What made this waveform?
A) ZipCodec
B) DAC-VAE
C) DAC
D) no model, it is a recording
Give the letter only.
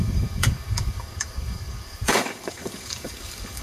C